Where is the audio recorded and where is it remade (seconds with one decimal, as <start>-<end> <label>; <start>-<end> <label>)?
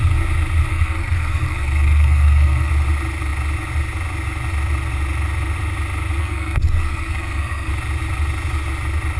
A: 0.0-0.7 recorded; 0.7-2.7 remade; 2.7-6.2 recorded; 6.2-7.7 remade; 7.7-9.2 recorded